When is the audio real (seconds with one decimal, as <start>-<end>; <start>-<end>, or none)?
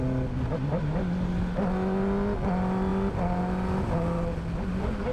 0.0-5.1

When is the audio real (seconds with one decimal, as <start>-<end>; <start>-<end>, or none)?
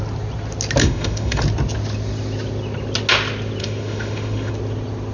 0.0-0.8; 1.4-3.6; 4.5-5.1